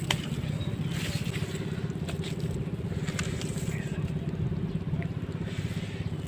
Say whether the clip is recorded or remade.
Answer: recorded